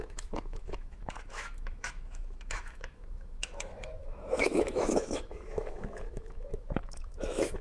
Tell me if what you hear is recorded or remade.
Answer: remade